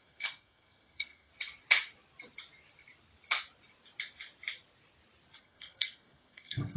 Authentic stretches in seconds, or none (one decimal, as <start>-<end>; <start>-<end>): 1.3-5.4